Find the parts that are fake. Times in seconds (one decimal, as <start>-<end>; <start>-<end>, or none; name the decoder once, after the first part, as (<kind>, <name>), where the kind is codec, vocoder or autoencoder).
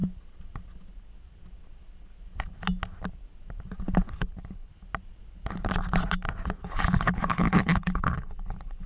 4.1-4.7 (codec, HILCodec); 6.6-8.9